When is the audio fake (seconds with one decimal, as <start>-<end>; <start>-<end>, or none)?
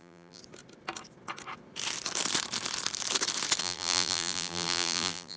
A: 0.0-0.4; 3.6-5.4